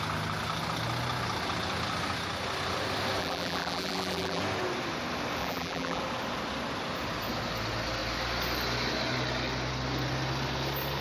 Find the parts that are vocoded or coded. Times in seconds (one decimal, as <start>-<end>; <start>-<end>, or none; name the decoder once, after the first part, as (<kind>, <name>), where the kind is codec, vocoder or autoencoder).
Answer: 3.2-4.4 (vocoder, BigVGAN v2); 5.4-6.0